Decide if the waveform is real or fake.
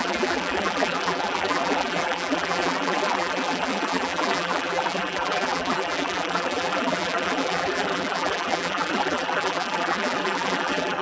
fake